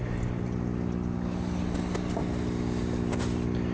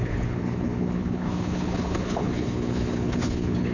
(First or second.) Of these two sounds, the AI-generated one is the second